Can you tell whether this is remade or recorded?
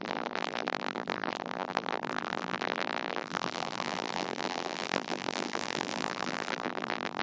remade